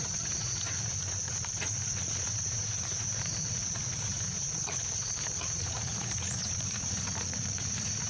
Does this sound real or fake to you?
fake